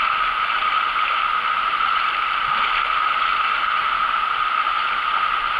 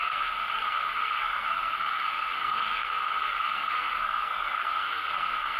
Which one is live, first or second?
first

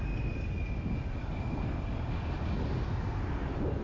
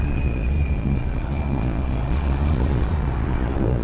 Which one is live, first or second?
first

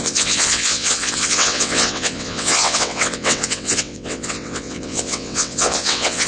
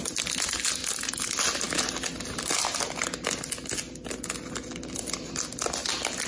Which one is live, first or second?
second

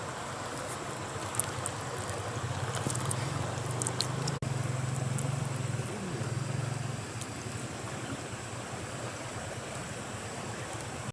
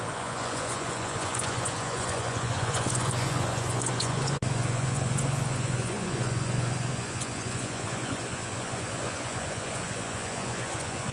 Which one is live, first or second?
first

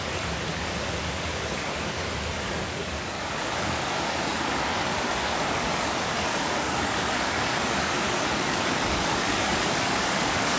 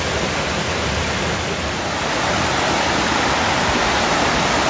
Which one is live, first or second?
second